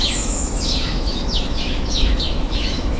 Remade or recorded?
remade